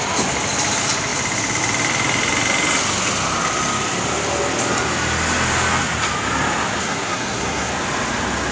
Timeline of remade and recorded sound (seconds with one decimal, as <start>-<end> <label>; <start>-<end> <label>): 0.0-6.8 recorded; 6.8-7.7 remade; 7.7-8.5 recorded